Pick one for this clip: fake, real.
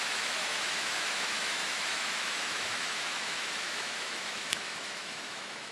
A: fake